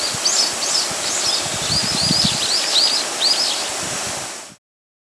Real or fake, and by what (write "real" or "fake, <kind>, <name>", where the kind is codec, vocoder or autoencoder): real